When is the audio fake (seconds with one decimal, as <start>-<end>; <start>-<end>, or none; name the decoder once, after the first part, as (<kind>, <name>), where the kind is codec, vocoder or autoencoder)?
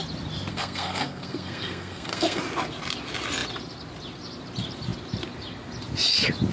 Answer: 0.5-2.4 (codec, SNAC)